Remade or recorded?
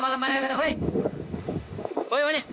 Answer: remade